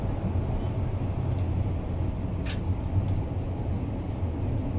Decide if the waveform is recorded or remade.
recorded